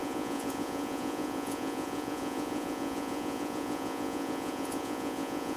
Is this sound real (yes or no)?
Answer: no